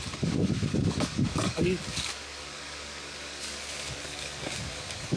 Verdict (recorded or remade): remade